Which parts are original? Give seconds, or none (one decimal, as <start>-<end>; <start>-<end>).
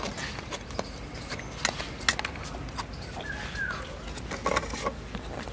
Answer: 0.0-5.5